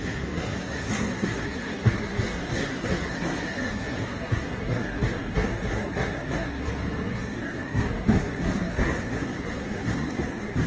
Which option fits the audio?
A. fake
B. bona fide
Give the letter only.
A